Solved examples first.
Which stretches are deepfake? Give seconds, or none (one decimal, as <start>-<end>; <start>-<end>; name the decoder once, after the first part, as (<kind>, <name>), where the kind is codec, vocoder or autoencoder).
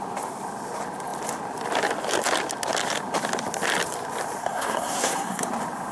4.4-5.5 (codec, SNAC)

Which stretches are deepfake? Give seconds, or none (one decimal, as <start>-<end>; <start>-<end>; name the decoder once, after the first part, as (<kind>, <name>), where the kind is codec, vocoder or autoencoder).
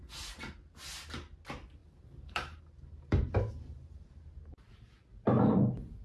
0.0-0.5 (vocoder, BigVGAN v2); 1.8-4.6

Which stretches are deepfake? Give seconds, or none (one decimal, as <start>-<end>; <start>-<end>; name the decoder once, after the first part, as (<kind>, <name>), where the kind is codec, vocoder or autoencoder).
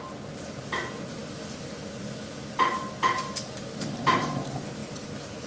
none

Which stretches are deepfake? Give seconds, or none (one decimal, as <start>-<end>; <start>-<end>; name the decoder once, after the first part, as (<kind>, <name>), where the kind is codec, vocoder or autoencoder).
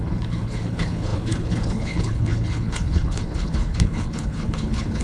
0.0-5.0 (codec, HILCodec)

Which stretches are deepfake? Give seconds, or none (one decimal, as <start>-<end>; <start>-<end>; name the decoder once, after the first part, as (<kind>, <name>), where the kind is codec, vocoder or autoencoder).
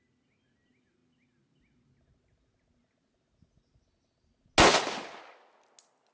none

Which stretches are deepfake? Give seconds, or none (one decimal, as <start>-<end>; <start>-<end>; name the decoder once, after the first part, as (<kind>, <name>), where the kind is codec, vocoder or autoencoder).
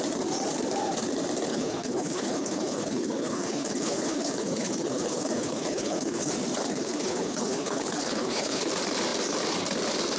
1.5-6.3 (codec, HILCodec); 6.7-8.6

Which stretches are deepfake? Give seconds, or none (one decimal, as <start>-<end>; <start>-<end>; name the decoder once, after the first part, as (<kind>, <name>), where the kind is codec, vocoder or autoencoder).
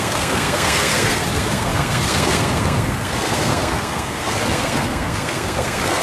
0.0-6.0 (codec, SNAC)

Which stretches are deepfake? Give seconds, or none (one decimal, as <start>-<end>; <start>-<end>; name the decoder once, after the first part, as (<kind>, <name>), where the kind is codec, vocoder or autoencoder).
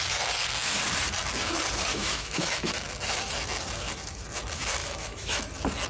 1.9-2.7 (autoencoder, DAC-VAE); 4.8-5.4